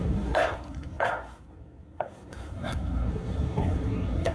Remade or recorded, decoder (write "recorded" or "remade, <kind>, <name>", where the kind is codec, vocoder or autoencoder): remade, codec, SNAC